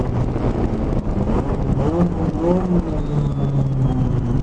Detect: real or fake real